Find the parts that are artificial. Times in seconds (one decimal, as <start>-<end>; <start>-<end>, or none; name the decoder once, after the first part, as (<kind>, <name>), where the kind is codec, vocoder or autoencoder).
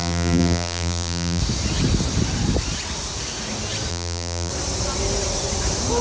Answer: 0.0-1.4 (vocoder, BigVGAN v2); 3.9-4.5